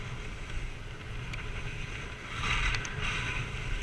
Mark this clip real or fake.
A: real